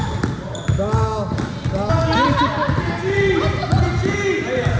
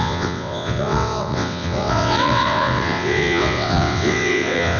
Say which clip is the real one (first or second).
first